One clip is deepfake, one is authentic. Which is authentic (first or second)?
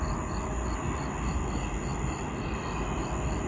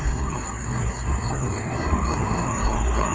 first